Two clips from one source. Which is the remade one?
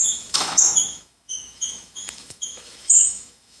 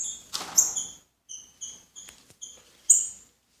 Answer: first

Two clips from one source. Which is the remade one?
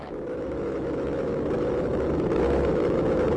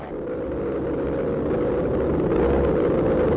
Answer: first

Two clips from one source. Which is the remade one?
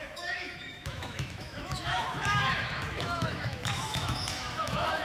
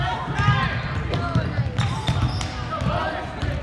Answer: first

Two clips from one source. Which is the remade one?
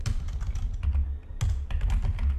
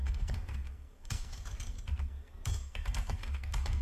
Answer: second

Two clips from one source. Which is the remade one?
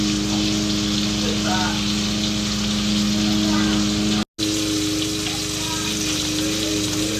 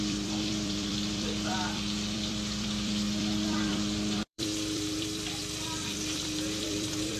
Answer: second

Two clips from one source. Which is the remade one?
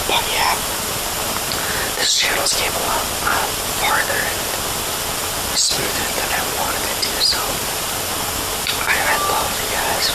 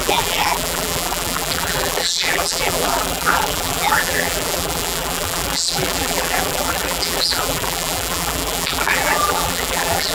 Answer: second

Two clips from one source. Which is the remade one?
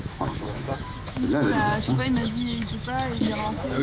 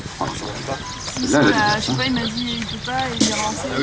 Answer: first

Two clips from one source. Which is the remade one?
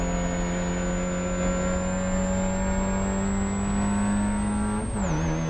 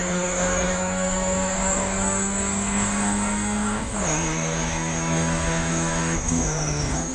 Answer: second